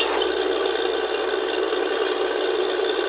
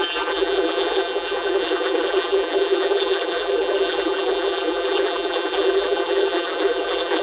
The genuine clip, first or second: first